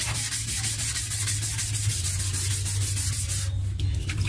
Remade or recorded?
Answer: recorded